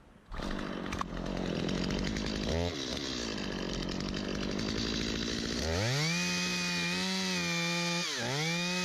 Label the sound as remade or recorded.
recorded